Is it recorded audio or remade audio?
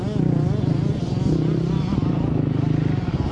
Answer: recorded